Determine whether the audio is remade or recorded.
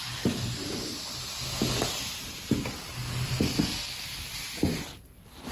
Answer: recorded